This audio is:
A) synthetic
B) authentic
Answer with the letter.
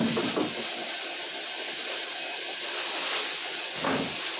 B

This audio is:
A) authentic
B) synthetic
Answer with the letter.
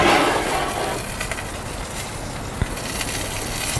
A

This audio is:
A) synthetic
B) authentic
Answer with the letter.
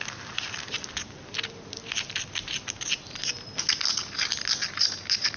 B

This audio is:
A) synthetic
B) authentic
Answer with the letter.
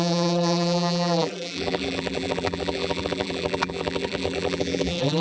A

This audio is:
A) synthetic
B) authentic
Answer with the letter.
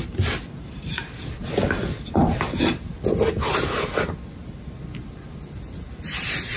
B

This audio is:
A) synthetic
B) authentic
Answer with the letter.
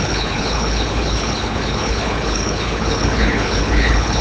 A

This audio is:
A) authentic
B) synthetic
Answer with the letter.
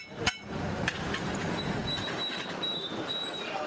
B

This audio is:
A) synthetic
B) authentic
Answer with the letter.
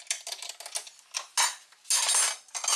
B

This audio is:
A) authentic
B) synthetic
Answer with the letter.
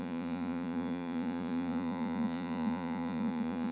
B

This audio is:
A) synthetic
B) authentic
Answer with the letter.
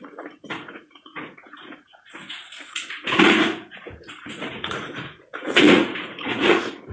A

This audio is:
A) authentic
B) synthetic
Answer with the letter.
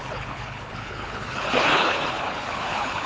B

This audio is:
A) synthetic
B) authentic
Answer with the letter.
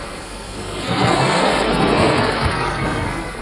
A